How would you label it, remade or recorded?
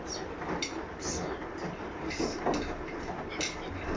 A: recorded